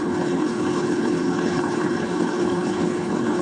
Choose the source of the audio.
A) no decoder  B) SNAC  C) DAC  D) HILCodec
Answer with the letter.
D